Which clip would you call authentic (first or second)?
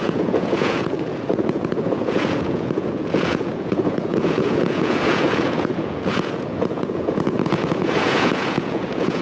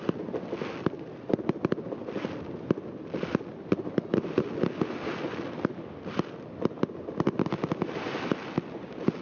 second